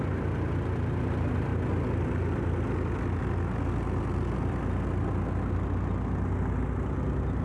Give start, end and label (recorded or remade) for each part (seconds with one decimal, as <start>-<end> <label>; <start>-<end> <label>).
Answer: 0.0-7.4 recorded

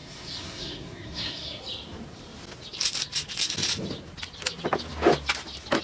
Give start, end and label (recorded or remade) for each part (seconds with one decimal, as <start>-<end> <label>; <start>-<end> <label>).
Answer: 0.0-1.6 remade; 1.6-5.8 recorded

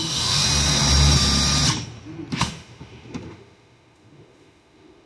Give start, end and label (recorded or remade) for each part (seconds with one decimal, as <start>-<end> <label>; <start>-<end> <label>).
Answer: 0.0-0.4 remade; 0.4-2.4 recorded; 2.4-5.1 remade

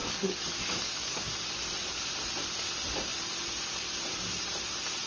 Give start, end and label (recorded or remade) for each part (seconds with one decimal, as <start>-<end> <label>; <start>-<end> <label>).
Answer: 0.0-1.3 remade; 1.3-5.1 recorded

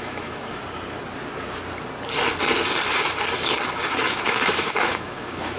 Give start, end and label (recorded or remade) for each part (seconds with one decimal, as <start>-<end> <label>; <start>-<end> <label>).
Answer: 0.0-0.6 remade; 0.6-4.0 recorded; 4.0-5.6 remade

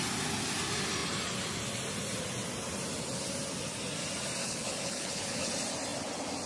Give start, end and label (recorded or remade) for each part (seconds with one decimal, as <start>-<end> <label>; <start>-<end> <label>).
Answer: 0.0-4.4 recorded; 4.4-5.5 remade; 5.5-6.5 recorded

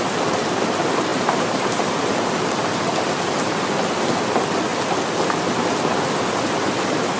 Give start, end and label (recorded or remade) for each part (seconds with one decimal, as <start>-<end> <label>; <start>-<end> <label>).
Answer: 0.0-1.1 recorded; 1.1-2.1 remade; 2.1-7.2 recorded